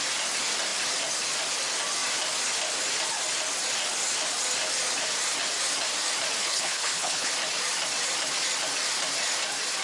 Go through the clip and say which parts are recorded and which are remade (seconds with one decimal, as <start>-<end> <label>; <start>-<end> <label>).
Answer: 0.0-6.4 recorded; 6.4-7.3 remade; 7.3-9.8 recorded